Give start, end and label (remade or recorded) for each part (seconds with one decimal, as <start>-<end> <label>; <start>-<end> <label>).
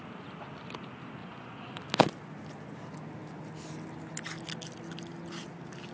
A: 0.0-1.2 recorded; 1.2-1.8 remade; 1.8-5.9 recorded